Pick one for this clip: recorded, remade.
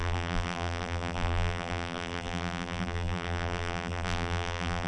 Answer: remade